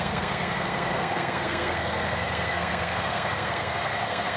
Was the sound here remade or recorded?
remade